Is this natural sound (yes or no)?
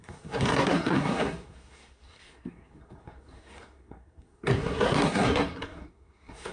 no